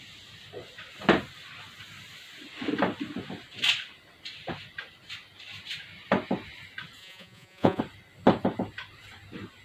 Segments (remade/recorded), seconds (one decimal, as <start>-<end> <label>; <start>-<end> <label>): 0.0-7.0 recorded; 7.0-7.8 remade; 7.8-9.6 recorded